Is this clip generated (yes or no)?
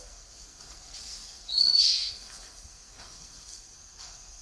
yes